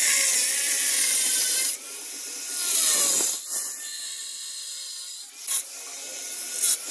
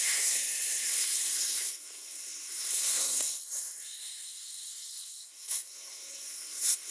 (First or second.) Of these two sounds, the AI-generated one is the second